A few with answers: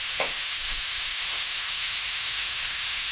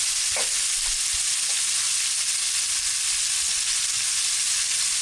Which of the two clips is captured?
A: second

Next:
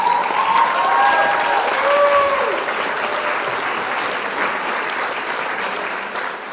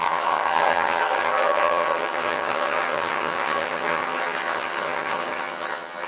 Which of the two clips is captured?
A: first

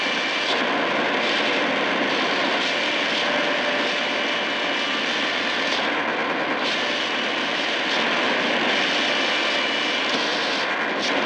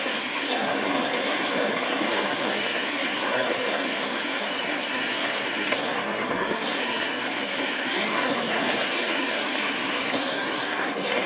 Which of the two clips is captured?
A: first